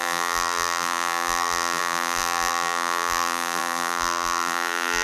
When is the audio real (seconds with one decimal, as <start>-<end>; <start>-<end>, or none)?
none